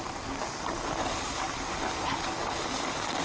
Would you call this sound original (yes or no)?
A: yes